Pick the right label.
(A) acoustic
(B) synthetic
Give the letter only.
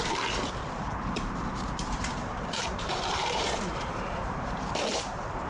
B